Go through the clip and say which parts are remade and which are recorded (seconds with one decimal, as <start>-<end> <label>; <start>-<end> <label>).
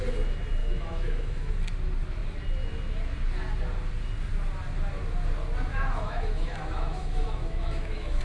0.0-0.6 recorded; 0.6-1.5 remade; 1.5-5.7 recorded; 5.7-8.2 remade